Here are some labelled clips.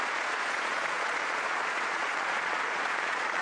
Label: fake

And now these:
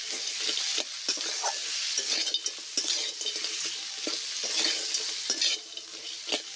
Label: real